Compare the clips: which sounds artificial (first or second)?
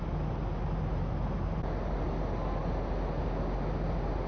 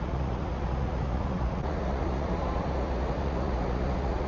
second